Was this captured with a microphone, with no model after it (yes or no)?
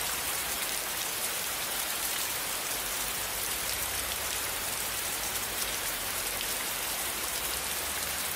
no